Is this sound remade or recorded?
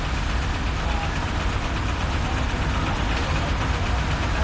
recorded